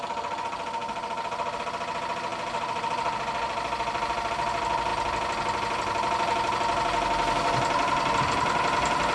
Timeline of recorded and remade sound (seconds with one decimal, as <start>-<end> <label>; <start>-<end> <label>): 0.0-2.3 recorded; 2.3-4.3 remade; 4.3-9.1 recorded